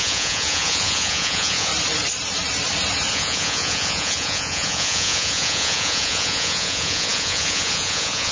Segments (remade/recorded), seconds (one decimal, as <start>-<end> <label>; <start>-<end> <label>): 0.0-1.7 remade; 1.7-3.1 recorded; 3.1-8.3 remade